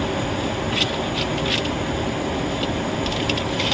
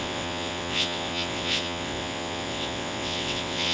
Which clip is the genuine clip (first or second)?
first